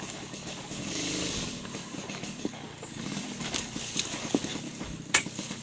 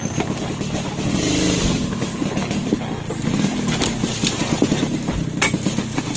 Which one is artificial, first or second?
first